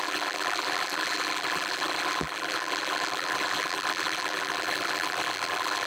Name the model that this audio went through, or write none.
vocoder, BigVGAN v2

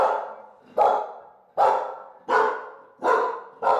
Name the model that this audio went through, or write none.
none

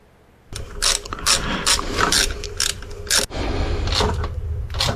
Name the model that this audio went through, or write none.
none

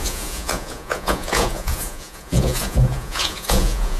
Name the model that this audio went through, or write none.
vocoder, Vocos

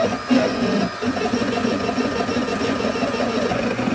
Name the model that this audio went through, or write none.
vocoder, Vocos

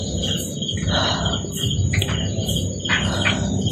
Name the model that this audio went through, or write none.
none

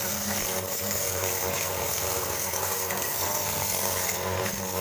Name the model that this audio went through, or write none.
codec, SNAC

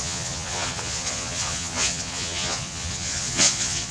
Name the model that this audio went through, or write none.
vocoder, Vocos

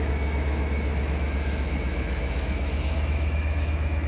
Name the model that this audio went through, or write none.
autoencoder, DAC-VAE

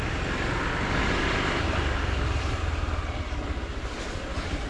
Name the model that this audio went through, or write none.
none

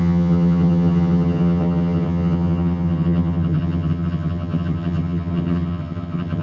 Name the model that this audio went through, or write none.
vocoder, HiFi-GAN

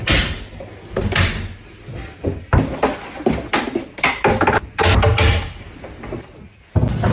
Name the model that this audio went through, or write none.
none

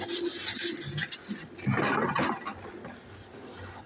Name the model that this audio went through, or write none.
none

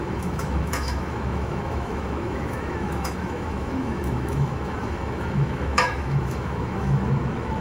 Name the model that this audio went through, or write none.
autoencoder, DAC-VAE